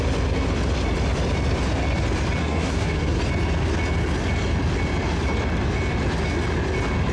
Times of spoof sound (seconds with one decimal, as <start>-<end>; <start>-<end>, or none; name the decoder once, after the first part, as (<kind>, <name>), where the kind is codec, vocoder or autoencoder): 2.4-3.2 (codec, SNAC)